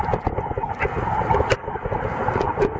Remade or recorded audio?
recorded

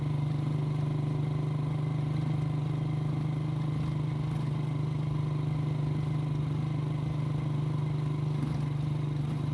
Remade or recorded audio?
recorded